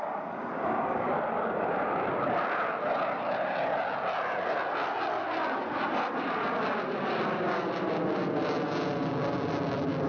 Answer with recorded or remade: recorded